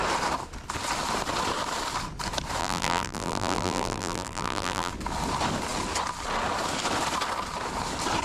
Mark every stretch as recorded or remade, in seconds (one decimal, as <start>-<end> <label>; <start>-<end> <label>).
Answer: 0.0-2.6 recorded; 2.6-4.9 remade; 4.9-8.2 recorded